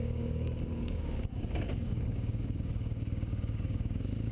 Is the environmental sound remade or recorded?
remade